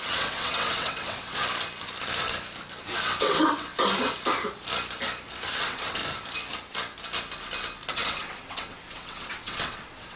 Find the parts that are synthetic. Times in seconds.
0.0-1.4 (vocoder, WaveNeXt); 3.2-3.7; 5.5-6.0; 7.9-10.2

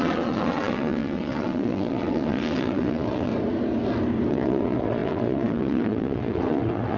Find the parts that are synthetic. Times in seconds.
0.0-3.3 (vocoder, WaveNeXt); 4.3-7.0